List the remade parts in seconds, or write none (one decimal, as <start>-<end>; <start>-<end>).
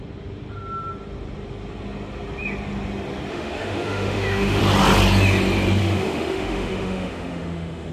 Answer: 3.3-4.6; 5.8-7.9